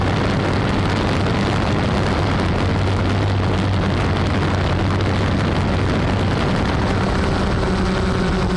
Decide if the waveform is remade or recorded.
recorded